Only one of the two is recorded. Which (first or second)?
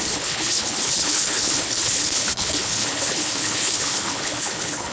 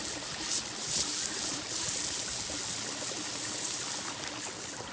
second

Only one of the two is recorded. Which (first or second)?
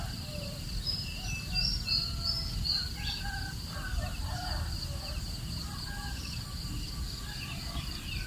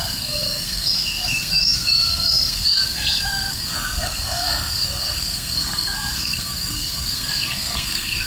first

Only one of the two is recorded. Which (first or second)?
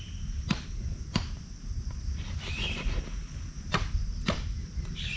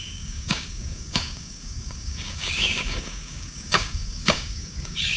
first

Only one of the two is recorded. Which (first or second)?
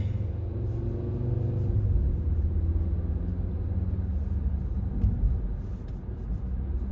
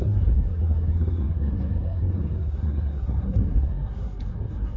first